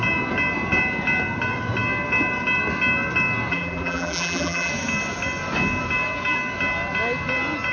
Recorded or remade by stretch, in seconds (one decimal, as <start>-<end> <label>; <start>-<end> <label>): 0.0-3.5 recorded; 3.5-4.7 remade; 4.7-7.7 recorded